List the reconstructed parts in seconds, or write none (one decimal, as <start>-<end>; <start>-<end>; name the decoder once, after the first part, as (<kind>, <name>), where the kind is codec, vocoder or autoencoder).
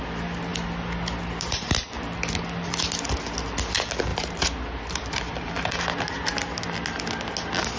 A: 4.1-5.8 (vocoder, BigVGAN v2)